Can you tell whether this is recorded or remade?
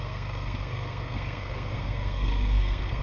remade